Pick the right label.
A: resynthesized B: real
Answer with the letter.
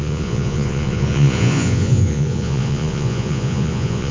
A